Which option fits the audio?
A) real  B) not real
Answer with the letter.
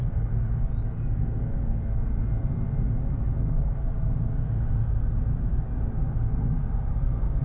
A